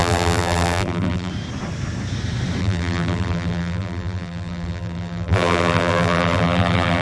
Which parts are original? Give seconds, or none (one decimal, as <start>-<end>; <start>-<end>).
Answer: 1.3-2.6